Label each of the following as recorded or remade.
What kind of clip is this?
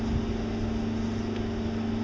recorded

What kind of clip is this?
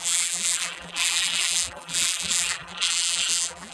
remade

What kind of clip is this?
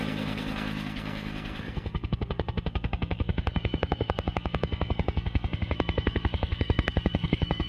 remade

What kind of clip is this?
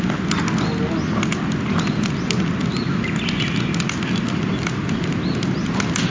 recorded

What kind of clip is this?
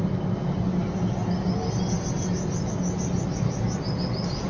recorded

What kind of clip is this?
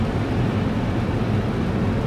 recorded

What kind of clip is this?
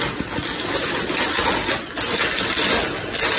recorded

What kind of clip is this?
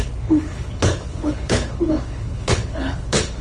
remade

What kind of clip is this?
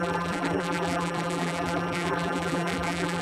remade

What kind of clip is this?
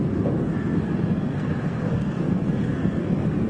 remade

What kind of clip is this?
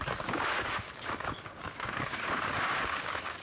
remade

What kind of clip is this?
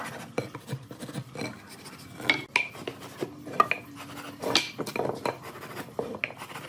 recorded